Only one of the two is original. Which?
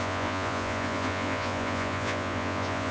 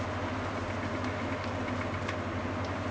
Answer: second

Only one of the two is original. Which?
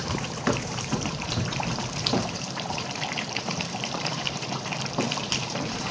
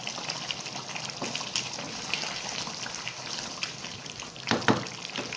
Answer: second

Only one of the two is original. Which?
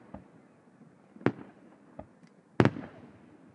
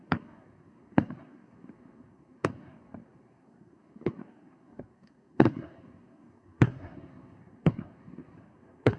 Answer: first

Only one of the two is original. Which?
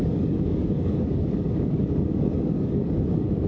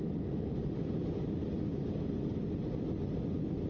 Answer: second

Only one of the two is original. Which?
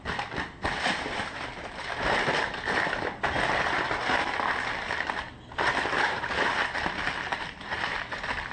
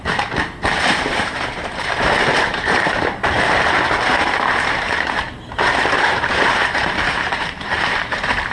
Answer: first